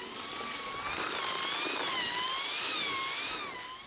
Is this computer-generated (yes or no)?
no